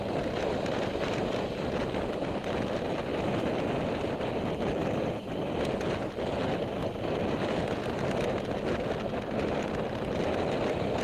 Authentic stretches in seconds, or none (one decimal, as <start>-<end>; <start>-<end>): 0.0-11.0